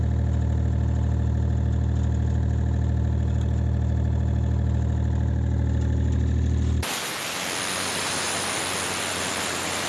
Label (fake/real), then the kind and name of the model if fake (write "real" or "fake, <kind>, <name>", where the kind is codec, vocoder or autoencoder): real